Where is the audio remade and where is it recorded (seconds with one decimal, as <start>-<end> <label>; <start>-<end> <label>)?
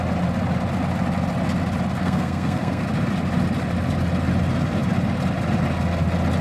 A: 0.0-2.0 recorded; 2.0-2.8 remade; 2.8-6.4 recorded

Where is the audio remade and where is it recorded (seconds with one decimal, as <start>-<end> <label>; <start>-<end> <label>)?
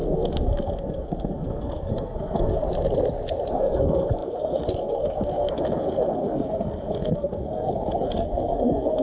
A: 0.0-2.6 remade; 2.6-3.5 recorded; 3.5-9.0 remade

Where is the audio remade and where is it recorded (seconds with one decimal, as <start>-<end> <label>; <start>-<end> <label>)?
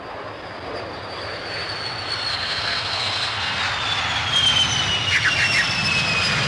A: 0.0-2.3 recorded; 2.3-3.6 remade; 3.6-6.5 recorded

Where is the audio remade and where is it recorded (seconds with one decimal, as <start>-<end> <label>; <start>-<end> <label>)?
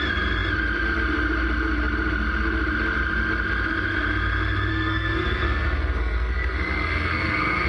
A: 0.0-4.7 recorded; 4.7-7.7 remade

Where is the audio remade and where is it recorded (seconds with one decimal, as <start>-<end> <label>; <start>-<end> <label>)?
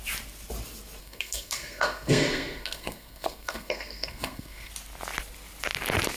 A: 0.0-1.0 recorded; 1.0-4.7 remade; 4.7-6.2 recorded